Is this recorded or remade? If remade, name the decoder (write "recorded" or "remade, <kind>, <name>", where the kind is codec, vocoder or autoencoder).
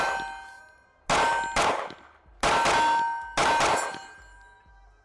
recorded